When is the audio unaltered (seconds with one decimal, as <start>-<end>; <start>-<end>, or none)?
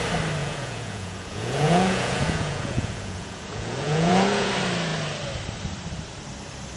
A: 0.0-0.4; 4.5-6.8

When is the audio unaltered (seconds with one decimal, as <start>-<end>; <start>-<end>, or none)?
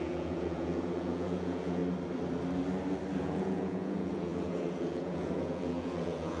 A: 1.8-3.2